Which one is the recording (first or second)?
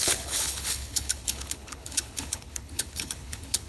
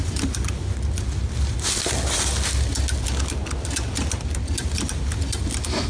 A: second